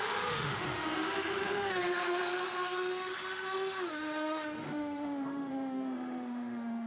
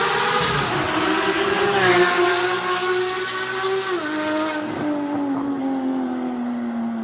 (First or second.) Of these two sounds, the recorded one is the second